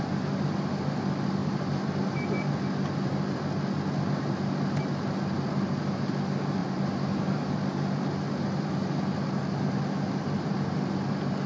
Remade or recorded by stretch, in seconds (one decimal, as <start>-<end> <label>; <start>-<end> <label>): 0.0-6.6 recorded; 6.6-7.5 remade; 7.5-11.5 recorded

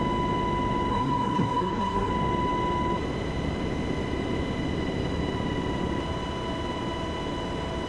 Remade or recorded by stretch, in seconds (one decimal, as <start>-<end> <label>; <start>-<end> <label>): 0.0-0.9 recorded; 0.9-2.1 remade; 2.1-7.9 recorded

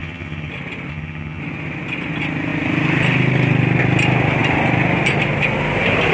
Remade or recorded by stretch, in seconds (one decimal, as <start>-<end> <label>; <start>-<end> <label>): 0.0-0.5 remade; 0.5-0.9 recorded; 0.9-1.4 remade; 1.4-6.1 recorded

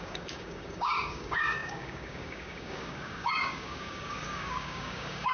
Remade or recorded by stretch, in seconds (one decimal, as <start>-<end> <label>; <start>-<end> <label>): 0.0-5.3 remade

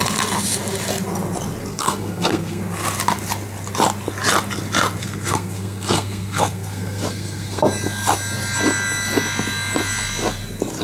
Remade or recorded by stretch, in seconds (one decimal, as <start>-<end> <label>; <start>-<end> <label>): 0.0-1.7 recorded; 1.7-2.6 remade; 2.6-5.0 recorded; 5.0-7.6 remade; 7.6-10.8 recorded